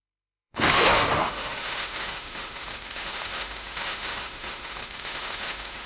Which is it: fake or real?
fake